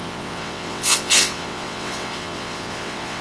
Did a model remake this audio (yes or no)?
yes